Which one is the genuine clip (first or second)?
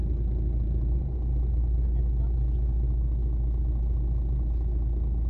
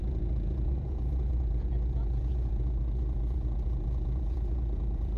first